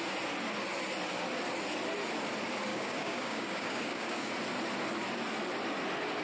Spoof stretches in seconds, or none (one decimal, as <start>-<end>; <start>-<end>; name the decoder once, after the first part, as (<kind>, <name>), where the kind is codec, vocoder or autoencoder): 2.7-4.3 (codec, DAC)